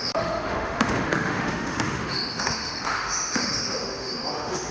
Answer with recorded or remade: remade